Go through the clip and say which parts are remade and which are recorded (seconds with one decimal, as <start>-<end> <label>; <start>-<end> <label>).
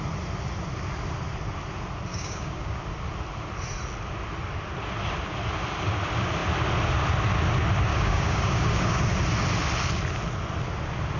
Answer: 0.0-2.1 recorded; 2.1-2.8 remade; 2.8-7.9 recorded; 7.9-9.0 remade; 9.0-11.2 recorded